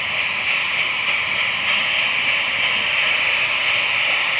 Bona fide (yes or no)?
no